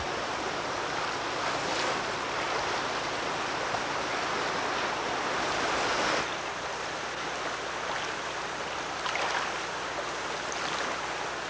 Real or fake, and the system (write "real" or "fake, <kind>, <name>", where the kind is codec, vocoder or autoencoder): real